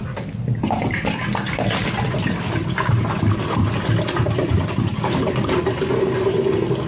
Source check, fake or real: real